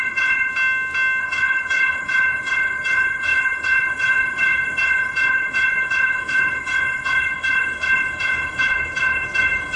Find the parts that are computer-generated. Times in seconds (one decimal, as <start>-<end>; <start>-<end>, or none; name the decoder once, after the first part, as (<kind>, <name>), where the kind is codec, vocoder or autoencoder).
0.0-0.5 (codec, HILCodec); 1.2-9.8